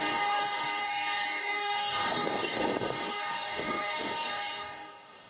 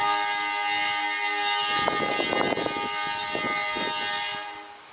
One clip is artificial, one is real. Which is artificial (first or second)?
first